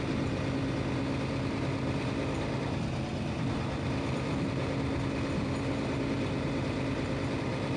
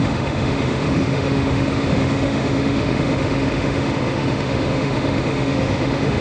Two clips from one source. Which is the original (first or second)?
first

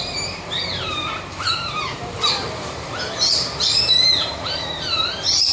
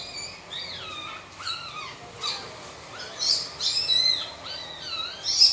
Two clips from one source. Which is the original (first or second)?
second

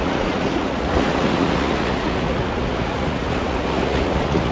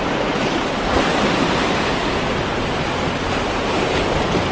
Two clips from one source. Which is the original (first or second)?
second